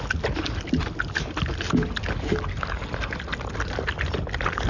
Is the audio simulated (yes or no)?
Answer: no